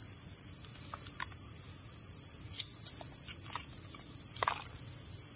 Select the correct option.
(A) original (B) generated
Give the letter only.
A